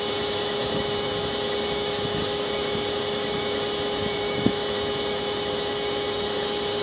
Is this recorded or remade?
remade